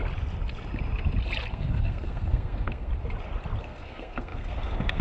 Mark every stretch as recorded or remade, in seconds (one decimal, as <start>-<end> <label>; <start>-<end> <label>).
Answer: 0.0-1.5 recorded; 1.5-2.9 remade; 2.9-3.6 recorded; 3.6-5.0 remade